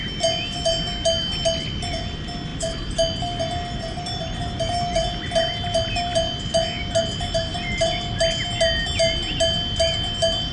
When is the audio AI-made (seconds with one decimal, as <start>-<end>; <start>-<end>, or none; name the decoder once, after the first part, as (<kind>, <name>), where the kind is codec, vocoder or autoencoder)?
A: none